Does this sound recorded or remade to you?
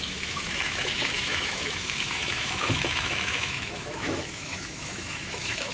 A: remade